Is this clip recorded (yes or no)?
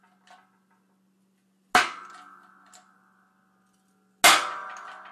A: yes